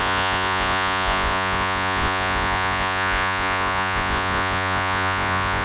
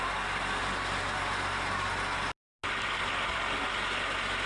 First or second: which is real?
second